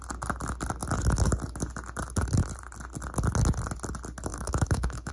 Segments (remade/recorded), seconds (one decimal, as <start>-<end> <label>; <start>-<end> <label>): 0.0-4.3 recorded; 4.3-5.1 remade